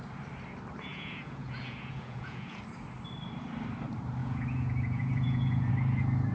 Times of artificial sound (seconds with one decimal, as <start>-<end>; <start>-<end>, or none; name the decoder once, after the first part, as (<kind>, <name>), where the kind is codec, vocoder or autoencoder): 0.9-2.6 (vocoder, Vocos); 4.2-5.7